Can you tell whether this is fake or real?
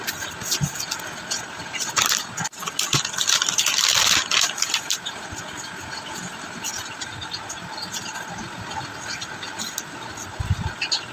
real